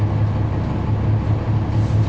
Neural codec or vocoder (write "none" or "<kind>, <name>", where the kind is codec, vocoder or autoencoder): none